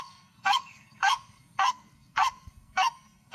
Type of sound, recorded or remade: remade